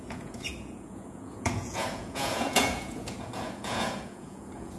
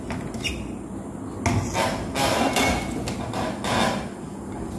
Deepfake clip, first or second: first